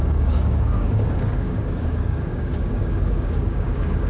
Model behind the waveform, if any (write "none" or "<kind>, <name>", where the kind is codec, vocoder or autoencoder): codec, DAC